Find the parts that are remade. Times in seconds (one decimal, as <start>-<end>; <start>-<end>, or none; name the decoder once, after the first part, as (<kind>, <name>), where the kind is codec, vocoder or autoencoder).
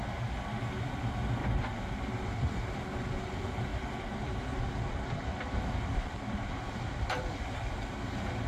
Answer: 1.4-2.3 (vocoder, BigVGAN v2); 3.7-4.7